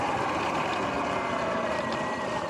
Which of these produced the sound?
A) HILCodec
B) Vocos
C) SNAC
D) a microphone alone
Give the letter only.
D